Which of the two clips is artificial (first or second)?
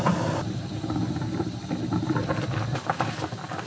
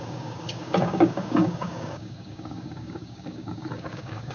second